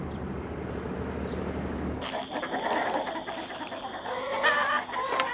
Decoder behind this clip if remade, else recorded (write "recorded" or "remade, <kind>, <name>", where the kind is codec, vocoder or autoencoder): remade, vocoder, BigVGAN v2